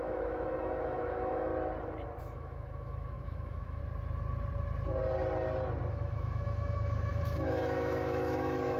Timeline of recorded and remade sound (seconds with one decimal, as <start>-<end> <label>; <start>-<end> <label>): 0.0-1.5 remade; 1.5-2.2 recorded; 2.2-3.8 remade; 3.8-5.9 recorded; 5.9-8.8 remade